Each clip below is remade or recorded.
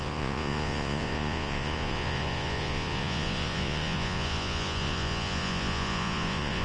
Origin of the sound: remade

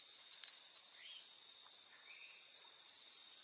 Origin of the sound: remade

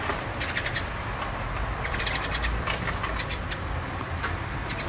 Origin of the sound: recorded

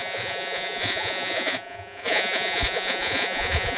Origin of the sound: remade